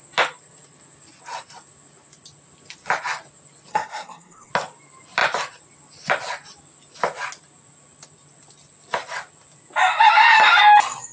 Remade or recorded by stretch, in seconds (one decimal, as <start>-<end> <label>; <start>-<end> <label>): 0.0-3.7 recorded; 3.7-4.5 remade; 4.5-11.1 recorded